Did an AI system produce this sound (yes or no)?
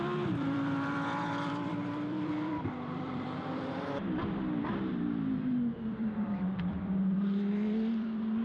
yes